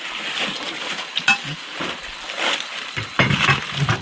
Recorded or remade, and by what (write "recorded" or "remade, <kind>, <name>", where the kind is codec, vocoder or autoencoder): recorded